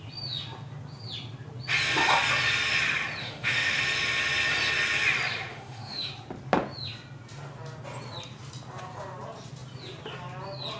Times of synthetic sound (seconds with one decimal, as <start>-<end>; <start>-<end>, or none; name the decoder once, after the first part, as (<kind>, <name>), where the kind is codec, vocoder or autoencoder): 3.2-3.8 (autoencoder, DAC-VAE); 5.5-6.1

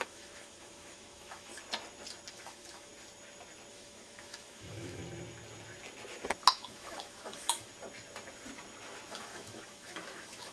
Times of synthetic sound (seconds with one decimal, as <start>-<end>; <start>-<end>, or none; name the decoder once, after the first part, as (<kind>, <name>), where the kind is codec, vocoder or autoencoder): 0.0-1.5 (autoencoder, DAC-VAE); 2.3-2.9; 3.7-5.0; 6.5-7.7; 9.1-10.5

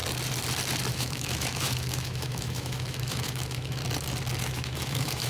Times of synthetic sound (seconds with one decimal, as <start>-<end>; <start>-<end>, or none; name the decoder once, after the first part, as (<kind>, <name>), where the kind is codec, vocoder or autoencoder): 0.9-3.8 (autoencoder, DAC-VAE); 4.4-5.3